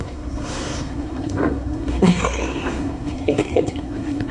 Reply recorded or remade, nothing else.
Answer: remade